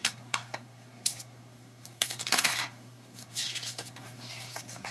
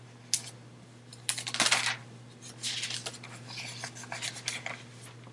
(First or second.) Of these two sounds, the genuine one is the second